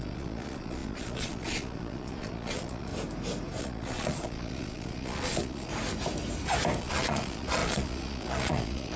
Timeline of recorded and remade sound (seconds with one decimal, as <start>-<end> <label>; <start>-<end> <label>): 0.0-2.9 remade; 2.9-3.6 recorded; 3.6-5.7 remade; 5.7-6.8 recorded; 6.8-9.0 remade